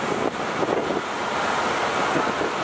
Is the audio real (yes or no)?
yes